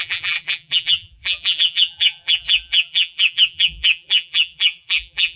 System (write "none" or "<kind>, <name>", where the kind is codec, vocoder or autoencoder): vocoder, BigVGAN v2